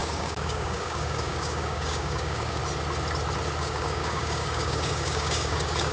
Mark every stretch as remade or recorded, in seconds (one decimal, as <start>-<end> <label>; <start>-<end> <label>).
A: 0.0-2.6 remade; 2.6-3.6 recorded; 3.6-5.9 remade